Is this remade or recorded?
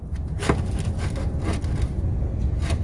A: recorded